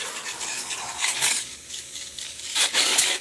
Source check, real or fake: fake